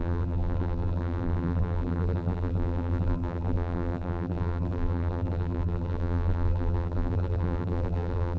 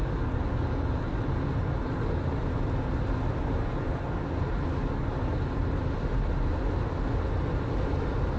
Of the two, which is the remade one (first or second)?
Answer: first